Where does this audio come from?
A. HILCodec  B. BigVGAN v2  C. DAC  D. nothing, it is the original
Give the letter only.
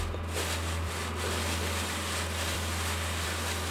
D